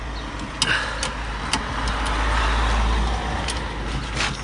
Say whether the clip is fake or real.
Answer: real